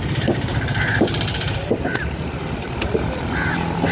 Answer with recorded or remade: remade